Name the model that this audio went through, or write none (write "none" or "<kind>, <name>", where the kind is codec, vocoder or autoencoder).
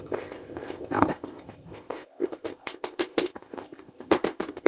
codec, ZipCodec